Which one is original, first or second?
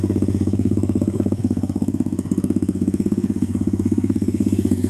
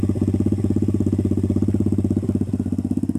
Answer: second